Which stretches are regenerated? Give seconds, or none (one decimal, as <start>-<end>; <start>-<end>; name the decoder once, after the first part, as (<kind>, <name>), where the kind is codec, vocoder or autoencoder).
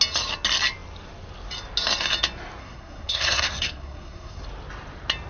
2.6-4.4 (codec, SNAC)